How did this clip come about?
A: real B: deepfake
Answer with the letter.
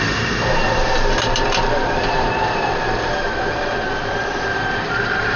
B